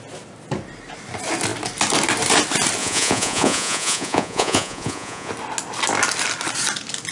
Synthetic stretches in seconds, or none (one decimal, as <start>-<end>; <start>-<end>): 2.8-5.3